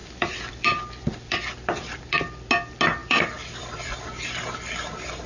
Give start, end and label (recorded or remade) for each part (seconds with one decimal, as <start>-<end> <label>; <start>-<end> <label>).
0.0-2.1 remade; 2.1-3.0 recorded; 3.0-3.8 remade; 3.8-5.3 recorded